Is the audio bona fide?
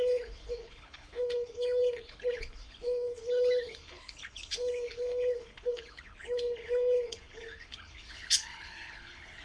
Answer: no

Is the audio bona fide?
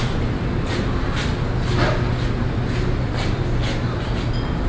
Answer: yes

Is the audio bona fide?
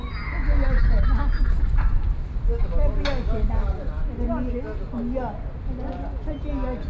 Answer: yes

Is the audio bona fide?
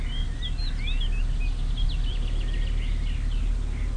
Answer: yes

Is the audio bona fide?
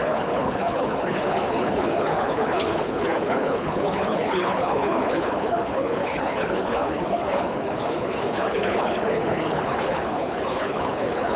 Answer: no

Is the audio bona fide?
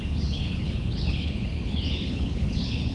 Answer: no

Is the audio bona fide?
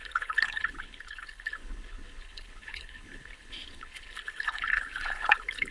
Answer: no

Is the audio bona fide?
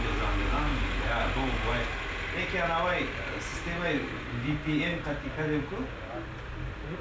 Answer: yes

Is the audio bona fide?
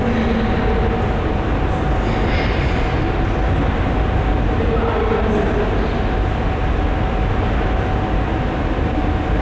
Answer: yes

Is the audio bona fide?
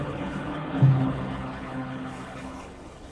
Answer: no